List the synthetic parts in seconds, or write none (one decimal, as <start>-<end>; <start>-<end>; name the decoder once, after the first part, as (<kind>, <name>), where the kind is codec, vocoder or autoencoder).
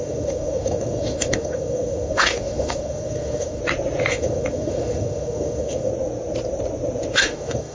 0.0-3.6 (autoencoder, DAC-VAE); 4.1-5.9; 7.2-7.7